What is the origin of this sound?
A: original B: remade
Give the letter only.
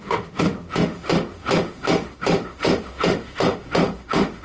B